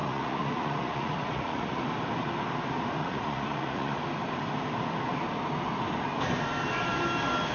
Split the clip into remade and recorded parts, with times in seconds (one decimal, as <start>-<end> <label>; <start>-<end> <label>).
0.0-1.8 remade; 1.8-3.0 recorded; 3.0-4.0 remade; 4.0-7.5 recorded